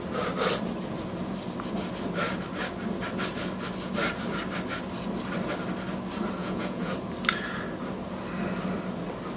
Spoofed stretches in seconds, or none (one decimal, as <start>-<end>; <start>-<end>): 6.4-6.9